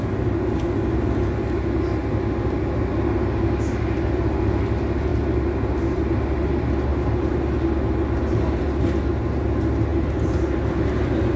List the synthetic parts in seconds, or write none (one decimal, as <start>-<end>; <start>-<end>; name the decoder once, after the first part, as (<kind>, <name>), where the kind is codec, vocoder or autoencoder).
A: none